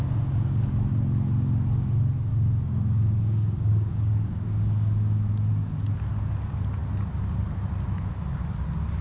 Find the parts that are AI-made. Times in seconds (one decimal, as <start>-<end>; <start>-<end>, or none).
2.3-5.5